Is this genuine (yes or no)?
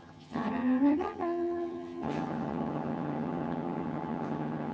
no